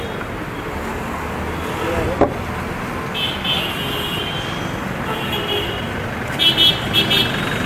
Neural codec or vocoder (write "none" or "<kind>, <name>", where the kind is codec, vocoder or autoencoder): none